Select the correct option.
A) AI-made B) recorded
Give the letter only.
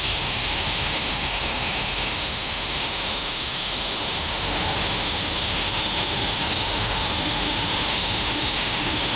A